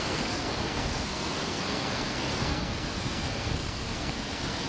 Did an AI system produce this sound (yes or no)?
yes